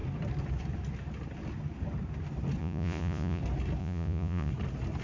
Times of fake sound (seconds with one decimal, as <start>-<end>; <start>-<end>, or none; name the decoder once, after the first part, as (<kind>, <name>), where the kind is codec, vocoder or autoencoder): 2.6-3.4 (vocoder, Vocos); 3.8-4.5